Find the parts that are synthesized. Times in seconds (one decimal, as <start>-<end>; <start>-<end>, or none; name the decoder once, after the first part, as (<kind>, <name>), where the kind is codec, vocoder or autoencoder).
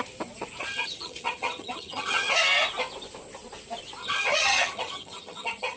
0.7-2.3 (vocoder, HiFi-GAN); 4.0-5.8